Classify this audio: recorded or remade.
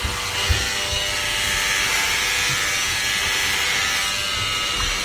recorded